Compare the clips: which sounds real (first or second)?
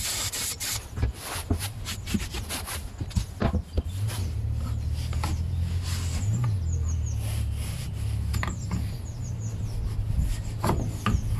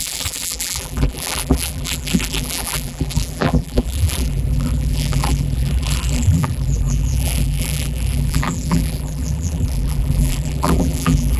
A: first